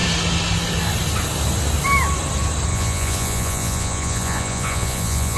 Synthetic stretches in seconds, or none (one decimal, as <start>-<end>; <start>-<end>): 2.7-5.4